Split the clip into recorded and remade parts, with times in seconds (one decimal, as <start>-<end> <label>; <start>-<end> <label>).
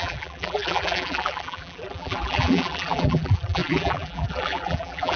0.0-5.2 remade